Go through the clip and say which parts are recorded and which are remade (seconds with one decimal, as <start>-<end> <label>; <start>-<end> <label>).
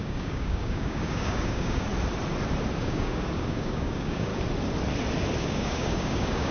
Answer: 0.0-1.9 remade; 1.9-2.8 recorded; 2.8-4.3 remade; 4.3-5.4 recorded; 5.4-6.5 remade